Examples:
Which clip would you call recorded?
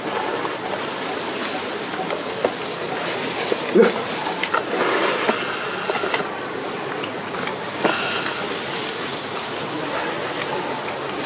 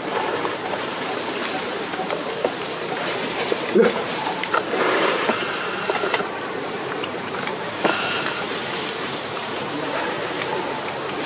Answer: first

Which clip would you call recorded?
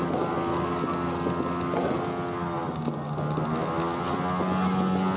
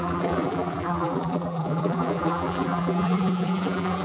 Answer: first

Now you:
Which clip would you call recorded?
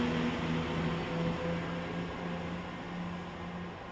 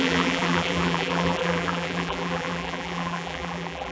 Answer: first